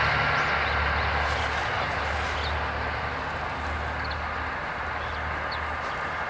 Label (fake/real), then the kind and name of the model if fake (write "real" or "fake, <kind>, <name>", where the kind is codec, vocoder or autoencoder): real